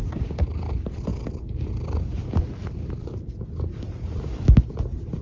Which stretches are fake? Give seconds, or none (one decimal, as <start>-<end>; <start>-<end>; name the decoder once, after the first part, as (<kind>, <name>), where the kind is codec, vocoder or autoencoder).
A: none